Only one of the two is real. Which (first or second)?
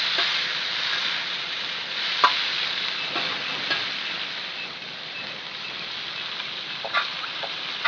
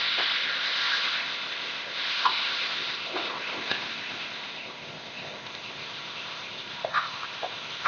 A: first